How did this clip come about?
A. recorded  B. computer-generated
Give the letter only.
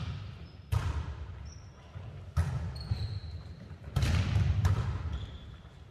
B